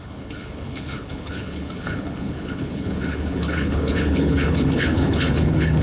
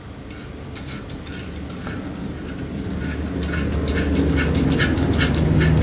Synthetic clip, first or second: first